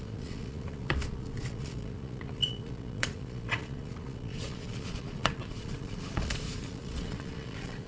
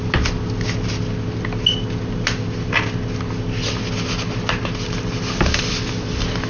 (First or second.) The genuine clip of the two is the second